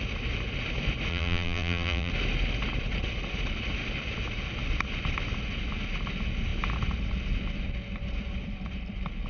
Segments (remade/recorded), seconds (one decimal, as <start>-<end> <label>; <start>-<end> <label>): 0.0-1.1 recorded; 1.1-2.1 remade; 2.1-9.3 recorded